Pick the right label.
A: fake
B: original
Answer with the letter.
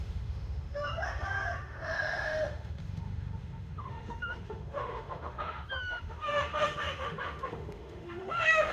A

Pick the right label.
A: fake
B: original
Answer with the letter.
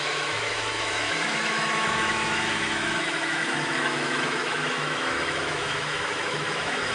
A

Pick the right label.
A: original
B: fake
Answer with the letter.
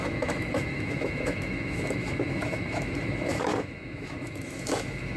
B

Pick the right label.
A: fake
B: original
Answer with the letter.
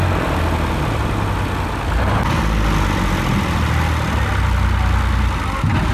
B